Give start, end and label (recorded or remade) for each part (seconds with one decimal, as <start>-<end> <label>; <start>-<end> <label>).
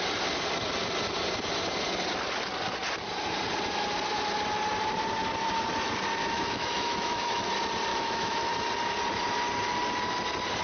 0.0-6.2 recorded; 6.2-7.5 remade; 7.5-7.9 recorded; 7.9-8.5 remade; 8.5-10.6 recorded